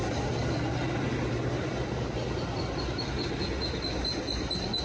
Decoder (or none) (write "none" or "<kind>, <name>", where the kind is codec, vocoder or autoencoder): none